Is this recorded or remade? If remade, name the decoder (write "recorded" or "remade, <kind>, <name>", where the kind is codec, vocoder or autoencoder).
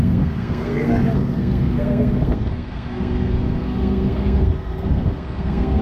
remade, codec, SNAC